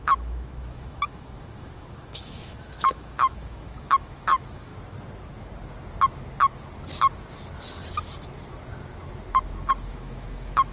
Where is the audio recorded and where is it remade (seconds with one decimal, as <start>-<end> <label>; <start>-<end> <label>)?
0.0-4.7 remade; 4.7-9.7 recorded; 9.7-10.7 remade